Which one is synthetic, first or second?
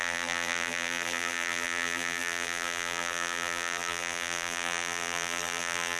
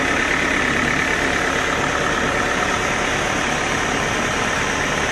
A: first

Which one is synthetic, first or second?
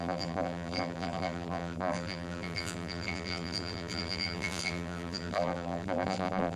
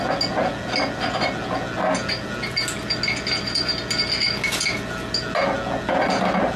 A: first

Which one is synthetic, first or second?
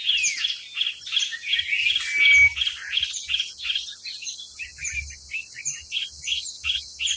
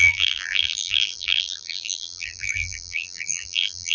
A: second